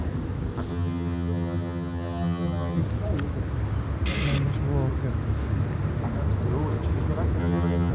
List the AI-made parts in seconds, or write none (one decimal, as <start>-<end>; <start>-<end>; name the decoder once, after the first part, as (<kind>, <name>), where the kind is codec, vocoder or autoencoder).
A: 0.7-2.8 (vocoder, HiFi-GAN); 7.4-7.9